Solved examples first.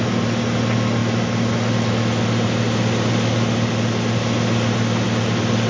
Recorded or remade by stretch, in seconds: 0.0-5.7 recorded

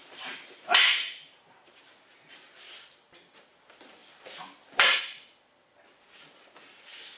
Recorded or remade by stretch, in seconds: 0.0-2.6 remade; 2.6-7.2 recorded

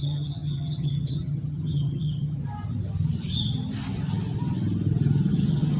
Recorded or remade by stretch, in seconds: 0.0-2.4 remade; 2.4-5.3 recorded; 5.3-5.8 remade

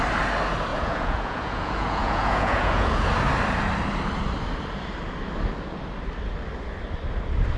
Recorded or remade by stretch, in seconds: 0.0-0.7 recorded; 0.7-3.1 remade; 3.1-7.6 recorded

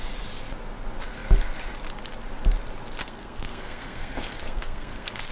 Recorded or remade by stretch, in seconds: 0.0-3.0 recorded; 3.0-5.3 remade